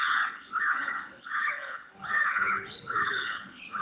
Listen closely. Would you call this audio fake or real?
fake